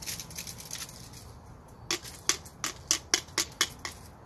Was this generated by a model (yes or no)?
no